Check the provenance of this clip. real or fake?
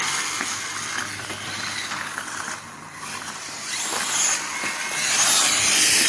real